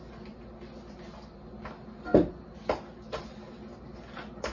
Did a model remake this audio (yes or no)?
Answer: no